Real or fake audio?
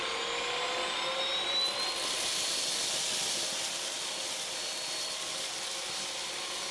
real